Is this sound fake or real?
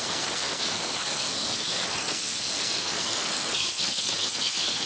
fake